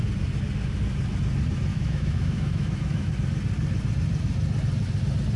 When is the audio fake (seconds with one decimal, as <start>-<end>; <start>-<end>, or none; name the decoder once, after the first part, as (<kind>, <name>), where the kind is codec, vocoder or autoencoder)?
1.7-3.1 (autoencoder, DAC-VAE)